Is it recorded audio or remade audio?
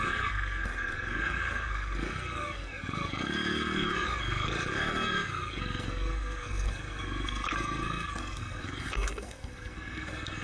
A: remade